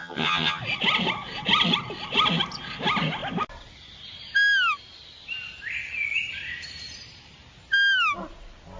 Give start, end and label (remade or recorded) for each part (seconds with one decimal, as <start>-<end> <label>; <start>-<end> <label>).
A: 0.0-0.6 remade; 0.6-8.8 recorded